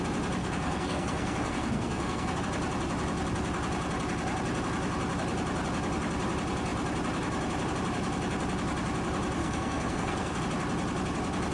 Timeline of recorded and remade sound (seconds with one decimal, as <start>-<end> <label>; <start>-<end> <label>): 0.0-0.4 recorded; 0.4-2.4 remade; 2.4-9.4 recorded; 9.4-10.4 remade; 10.4-11.5 recorded